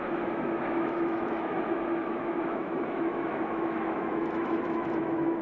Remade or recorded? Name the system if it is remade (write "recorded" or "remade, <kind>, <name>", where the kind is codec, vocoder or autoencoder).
remade, autoencoder, DAC-VAE